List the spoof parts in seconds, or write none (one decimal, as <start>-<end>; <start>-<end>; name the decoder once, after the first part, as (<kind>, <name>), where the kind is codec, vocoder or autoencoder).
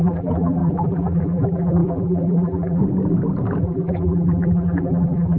0.0-2.8 (vocoder, BigVGAN v2); 3.6-5.4